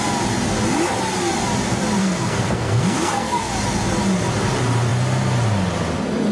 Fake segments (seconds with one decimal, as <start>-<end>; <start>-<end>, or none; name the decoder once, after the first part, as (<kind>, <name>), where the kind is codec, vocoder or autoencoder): 2.0-3.5 (codec, SNAC)